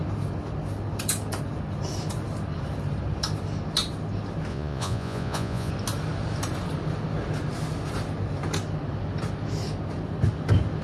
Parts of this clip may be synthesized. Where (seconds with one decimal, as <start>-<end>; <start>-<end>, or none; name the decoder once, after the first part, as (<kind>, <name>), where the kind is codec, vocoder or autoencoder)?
4.5-5.7 (vocoder, Vocos)